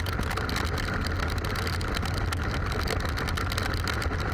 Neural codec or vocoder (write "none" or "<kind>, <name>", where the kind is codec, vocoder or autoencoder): none